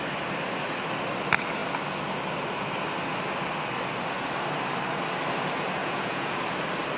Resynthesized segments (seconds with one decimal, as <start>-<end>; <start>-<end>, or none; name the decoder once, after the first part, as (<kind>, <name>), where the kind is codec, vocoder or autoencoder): 5.8-6.4 (vocoder, Vocos)